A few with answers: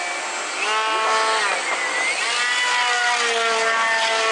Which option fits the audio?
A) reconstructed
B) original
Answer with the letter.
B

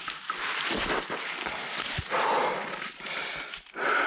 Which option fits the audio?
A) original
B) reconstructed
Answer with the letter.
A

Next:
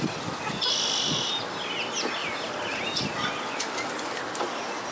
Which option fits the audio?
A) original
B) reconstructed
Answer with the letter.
A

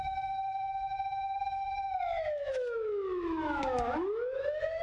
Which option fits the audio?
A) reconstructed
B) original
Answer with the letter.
A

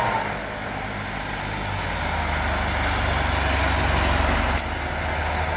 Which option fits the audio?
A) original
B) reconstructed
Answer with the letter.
A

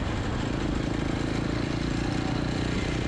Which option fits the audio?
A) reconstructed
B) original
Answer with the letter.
B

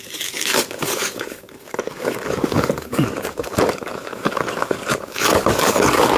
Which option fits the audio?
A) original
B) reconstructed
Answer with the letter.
B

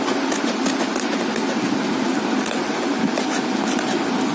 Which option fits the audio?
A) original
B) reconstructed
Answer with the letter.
A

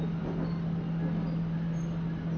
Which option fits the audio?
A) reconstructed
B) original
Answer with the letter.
B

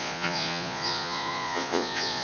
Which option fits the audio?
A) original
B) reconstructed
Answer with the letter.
B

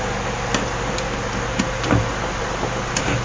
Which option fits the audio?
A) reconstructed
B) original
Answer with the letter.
B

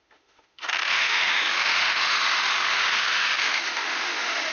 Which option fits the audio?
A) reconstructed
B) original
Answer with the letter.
A